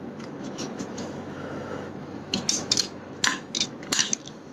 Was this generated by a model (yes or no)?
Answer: yes